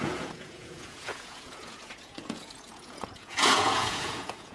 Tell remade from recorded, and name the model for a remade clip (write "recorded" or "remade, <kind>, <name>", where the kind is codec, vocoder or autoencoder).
remade, vocoder, Vocos